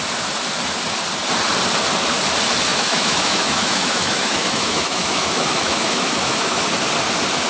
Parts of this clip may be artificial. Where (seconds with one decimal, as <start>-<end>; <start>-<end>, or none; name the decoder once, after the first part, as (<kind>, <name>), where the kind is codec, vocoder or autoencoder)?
2.7-6.6 (autoencoder, DAC-VAE)